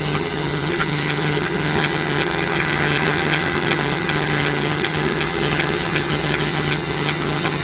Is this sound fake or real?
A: fake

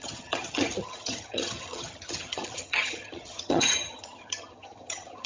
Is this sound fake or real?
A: fake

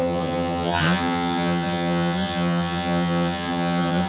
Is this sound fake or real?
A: fake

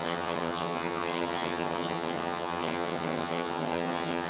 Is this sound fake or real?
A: fake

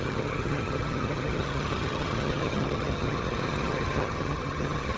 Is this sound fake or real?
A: fake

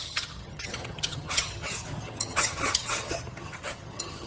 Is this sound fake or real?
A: fake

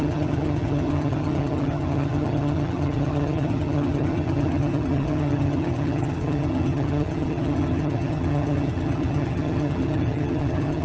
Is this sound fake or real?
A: fake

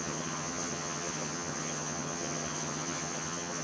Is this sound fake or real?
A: fake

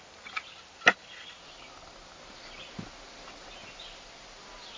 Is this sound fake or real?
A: real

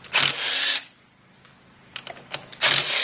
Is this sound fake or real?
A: real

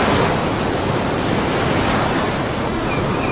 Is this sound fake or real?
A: real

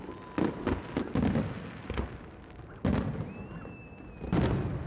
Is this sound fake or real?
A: real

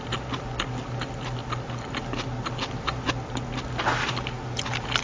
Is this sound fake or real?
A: real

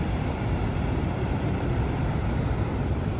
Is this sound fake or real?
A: real